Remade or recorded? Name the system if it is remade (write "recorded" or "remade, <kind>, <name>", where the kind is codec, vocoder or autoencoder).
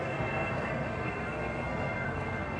remade, codec, SNAC